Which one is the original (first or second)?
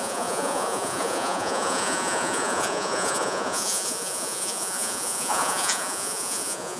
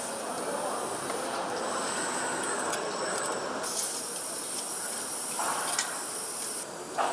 second